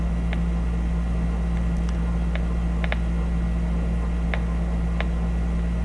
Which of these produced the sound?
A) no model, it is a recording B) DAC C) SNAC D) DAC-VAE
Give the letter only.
A